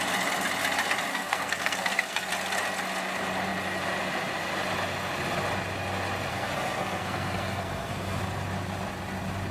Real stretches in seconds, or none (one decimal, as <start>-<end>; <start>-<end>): 0.0-1.1; 2.3-6.3; 8.2-9.5